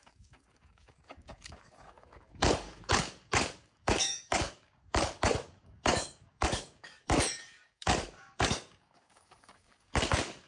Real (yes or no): no